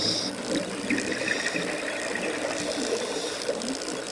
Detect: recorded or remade recorded